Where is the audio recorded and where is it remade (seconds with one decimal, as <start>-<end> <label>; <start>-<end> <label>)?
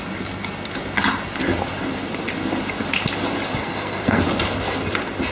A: 0.0-3.6 recorded; 3.6-4.2 remade; 4.2-5.3 recorded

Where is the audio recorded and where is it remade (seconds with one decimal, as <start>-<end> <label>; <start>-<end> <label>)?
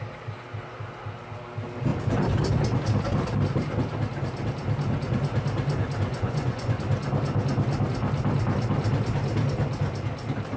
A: 0.0-6.1 recorded; 6.1-6.8 remade; 6.8-10.6 recorded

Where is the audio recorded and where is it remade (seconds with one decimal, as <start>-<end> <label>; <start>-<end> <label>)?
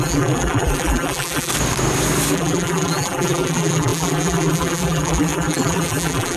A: 0.0-1.5 remade; 1.5-2.3 recorded; 2.3-6.4 remade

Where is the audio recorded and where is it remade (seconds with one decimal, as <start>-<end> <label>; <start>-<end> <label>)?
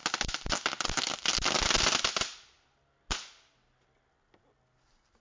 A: 0.0-5.2 recorded